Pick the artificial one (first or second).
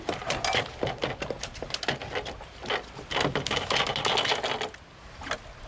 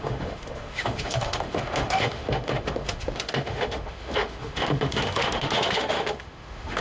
second